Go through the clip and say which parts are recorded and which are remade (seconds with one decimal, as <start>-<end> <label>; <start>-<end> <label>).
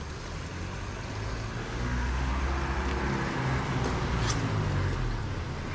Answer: 0.0-1.6 recorded; 1.6-2.3 remade; 2.3-5.7 recorded